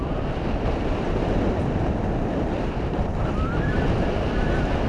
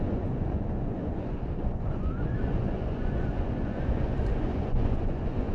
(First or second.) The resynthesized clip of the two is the second